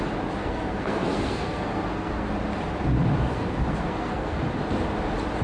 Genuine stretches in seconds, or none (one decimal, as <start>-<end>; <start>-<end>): 0.0-0.4; 2.3-3.3; 4.4-5.4